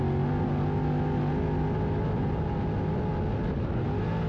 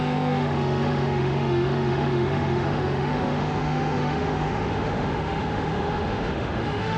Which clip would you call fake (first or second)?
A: second